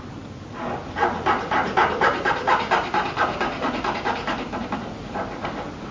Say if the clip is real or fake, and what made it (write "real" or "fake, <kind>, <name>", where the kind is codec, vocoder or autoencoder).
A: real